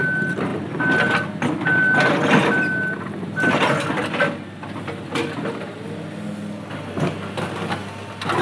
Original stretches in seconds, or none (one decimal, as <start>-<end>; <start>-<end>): 0.0-8.4

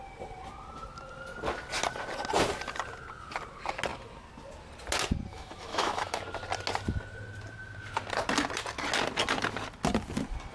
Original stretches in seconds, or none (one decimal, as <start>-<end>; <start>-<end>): 0.0-5.3; 6.2-10.5

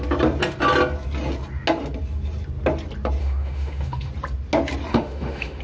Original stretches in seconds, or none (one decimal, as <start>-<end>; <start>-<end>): 0.0-3.2; 4.1-4.9

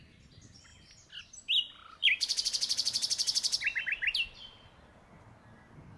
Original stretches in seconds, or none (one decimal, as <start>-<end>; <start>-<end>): 0.0-6.0

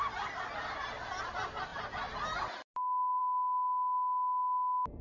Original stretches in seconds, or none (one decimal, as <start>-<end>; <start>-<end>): 0.0-5.0

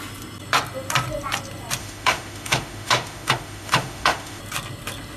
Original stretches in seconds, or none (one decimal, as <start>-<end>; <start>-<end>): 0.0-1.8; 4.4-5.2

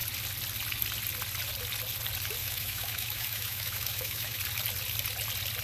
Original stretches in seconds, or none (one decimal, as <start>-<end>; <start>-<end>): 0.0-2.4; 4.4-5.6